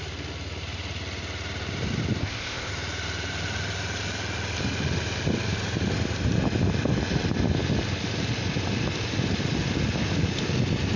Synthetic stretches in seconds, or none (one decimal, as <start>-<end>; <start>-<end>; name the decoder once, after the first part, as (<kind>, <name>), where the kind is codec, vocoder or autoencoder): 2.2-2.7 (codec, ZipCodec)